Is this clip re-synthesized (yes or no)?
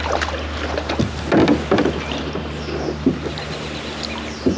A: no